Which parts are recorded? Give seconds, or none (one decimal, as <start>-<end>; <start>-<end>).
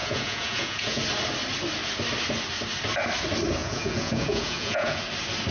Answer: 1.0-3.6; 5.0-5.5